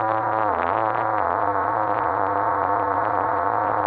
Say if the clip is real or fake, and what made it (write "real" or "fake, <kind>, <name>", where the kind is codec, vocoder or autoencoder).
fake, vocoder, Vocos